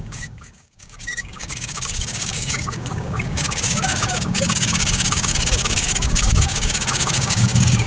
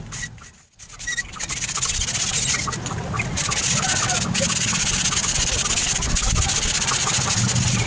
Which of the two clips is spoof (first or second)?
first